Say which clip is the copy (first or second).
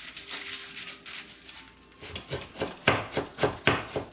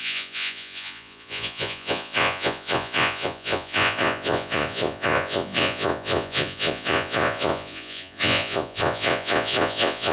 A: second